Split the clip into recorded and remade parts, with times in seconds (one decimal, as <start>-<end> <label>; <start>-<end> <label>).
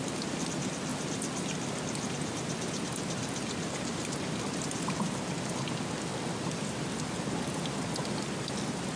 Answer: 0.0-0.9 recorded; 0.9-5.5 remade; 5.5-6.1 recorded; 6.1-6.9 remade; 6.9-9.0 recorded